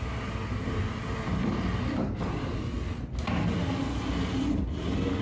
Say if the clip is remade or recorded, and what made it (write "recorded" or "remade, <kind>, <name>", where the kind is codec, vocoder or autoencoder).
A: recorded